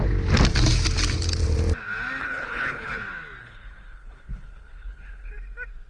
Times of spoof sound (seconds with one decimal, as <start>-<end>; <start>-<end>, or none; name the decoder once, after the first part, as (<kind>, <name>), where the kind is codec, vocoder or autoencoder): 2.2-2.9 (codec, HILCodec); 3.4-5.3

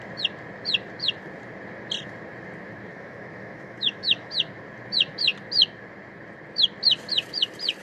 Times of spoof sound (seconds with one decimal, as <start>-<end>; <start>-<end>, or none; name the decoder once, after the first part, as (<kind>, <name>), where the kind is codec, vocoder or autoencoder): 2.9-4.3 (autoencoder, DAC-VAE)

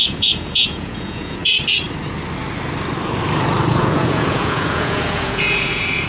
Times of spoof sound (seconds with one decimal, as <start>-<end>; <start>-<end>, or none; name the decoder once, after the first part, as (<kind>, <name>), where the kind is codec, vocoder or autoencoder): 0.0-1.4 (vocoder, Vocos); 3.7-6.1

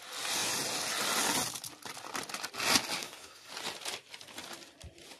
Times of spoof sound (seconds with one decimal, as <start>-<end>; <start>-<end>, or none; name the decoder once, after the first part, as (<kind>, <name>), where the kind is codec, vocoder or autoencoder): 3.0-3.5 (codec, SNAC)

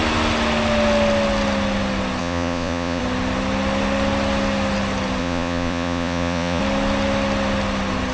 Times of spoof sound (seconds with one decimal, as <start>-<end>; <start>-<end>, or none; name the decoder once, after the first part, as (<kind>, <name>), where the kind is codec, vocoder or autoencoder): 2.2-3.0 (vocoder, Vocos); 5.2-6.6

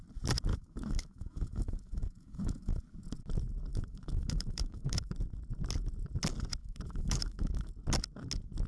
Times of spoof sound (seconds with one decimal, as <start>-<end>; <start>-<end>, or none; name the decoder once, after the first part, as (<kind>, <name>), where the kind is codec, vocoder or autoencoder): 0.5-2.8 (autoencoder, DAC-VAE); 3.7-5.1; 6.6-7.7

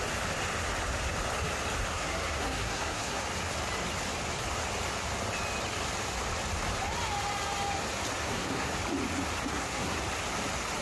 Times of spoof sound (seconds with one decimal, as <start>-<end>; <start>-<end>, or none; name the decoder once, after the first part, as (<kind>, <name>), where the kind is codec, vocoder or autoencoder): 1.9-3.2 (codec, SNAC); 8.2-8.7; 9.5-10.0

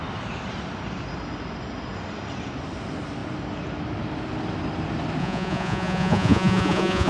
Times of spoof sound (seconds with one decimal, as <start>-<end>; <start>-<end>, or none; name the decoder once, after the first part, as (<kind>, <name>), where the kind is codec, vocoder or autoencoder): 5.2-7.1 (vocoder, Vocos)